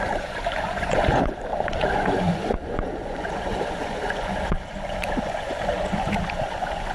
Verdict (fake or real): fake